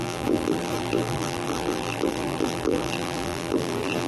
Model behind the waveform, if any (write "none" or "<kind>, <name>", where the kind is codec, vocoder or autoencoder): vocoder, BigVGAN v2